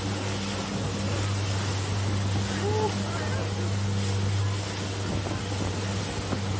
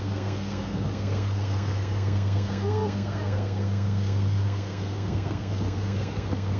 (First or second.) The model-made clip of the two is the second